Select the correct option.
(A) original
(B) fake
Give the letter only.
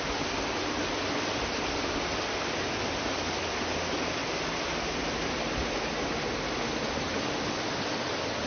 A